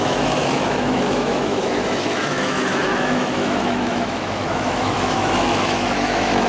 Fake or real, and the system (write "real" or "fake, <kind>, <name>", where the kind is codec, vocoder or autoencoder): fake, autoencoder, DAC-VAE